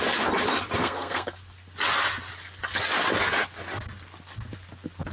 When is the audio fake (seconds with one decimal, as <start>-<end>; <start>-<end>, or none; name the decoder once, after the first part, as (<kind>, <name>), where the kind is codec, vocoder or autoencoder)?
0.8-1.4 (codec, SNAC)